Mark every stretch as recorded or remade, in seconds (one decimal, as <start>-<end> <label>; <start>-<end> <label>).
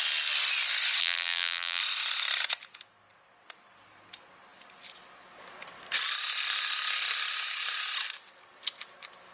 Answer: 0.0-1.0 recorded; 1.0-1.8 remade; 1.8-9.3 recorded